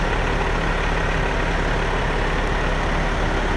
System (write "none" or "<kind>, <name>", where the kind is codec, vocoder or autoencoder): none